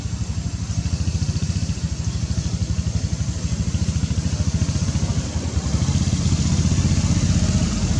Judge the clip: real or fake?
real